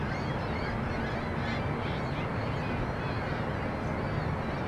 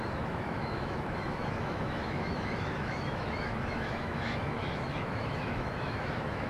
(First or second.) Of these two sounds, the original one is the first